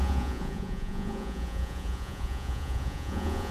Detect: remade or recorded remade